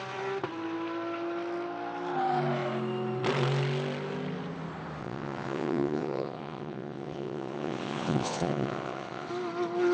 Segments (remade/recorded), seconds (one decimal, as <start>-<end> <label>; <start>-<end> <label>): 0.0-5.0 recorded; 5.0-9.3 remade; 9.3-9.9 recorded